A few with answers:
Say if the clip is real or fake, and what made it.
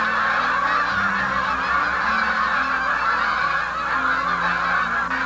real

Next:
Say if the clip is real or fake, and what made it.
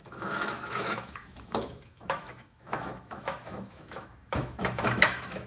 fake, autoencoder, DAC-VAE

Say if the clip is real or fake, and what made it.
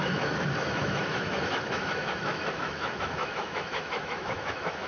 fake, autoencoder, DAC-VAE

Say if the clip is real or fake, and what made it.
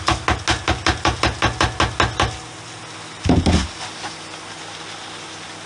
real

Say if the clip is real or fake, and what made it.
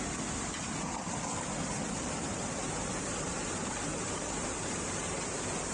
real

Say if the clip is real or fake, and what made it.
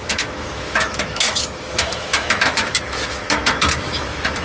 fake, autoencoder, DAC-VAE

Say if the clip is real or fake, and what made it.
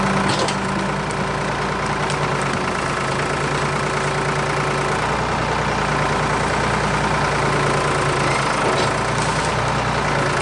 real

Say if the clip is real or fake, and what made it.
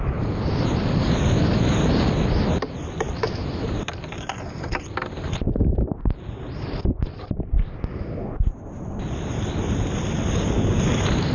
real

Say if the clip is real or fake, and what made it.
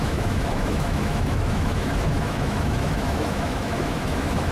fake, autoencoder, DAC-VAE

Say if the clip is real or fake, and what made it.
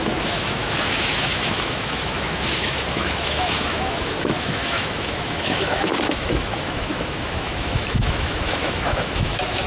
fake, autoencoder, DAC-VAE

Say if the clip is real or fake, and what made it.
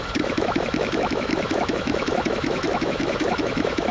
fake, autoencoder, DAC-VAE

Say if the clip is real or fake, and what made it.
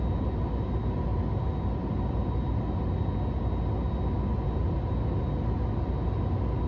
real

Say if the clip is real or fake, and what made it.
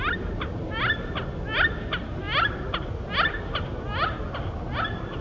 real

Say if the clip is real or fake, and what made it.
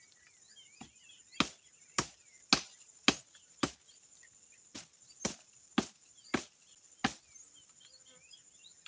real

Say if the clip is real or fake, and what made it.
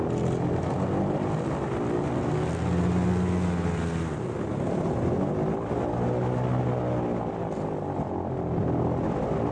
real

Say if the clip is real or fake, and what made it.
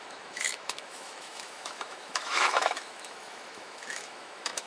fake, autoencoder, DAC-VAE